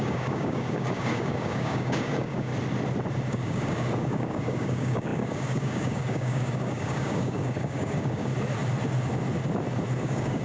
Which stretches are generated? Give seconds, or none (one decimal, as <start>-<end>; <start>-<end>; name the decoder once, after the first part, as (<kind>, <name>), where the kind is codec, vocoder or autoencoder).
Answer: 0.0-2.5 (codec, DAC); 3.3-8.3; 10.0-10.4